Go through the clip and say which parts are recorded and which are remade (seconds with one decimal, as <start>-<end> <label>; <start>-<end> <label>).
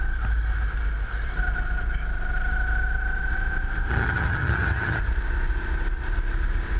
0.0-3.9 recorded; 3.9-5.0 remade; 5.0-6.8 recorded